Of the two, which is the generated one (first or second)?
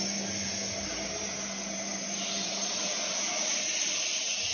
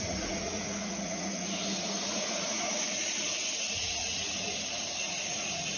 second